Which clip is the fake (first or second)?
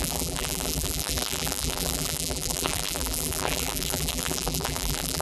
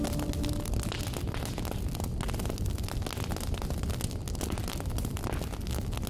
first